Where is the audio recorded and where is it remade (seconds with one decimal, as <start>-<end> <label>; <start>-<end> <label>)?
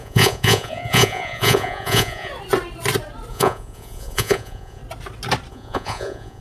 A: 0.0-2.3 remade; 2.3-3.3 recorded; 3.3-4.8 remade; 4.8-5.5 recorded; 5.5-6.4 remade